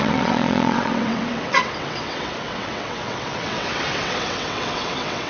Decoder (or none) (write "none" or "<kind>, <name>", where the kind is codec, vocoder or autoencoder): vocoder, WaveNeXt